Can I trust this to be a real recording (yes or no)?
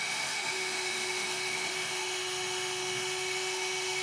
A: no